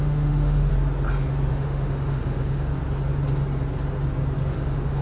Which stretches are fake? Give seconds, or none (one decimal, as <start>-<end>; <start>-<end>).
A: 0.0-0.7; 1.5-2.7; 4.5-5.0